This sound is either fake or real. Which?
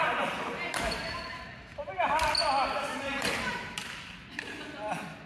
real